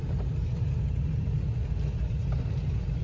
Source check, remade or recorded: recorded